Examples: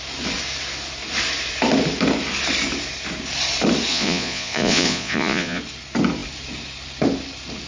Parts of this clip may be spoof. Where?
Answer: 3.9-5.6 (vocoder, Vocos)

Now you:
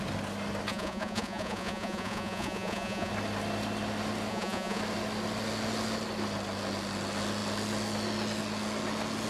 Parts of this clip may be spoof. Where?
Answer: 0.7-3.1 (vocoder, Vocos); 4.3-4.8

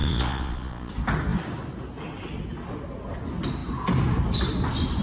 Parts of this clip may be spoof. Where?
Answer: 0.0-0.9 (vocoder, Vocos)